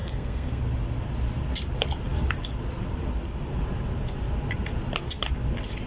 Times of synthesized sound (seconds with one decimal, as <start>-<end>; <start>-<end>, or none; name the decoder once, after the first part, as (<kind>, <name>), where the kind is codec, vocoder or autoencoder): 0.0-0.6 (codec, SNAC)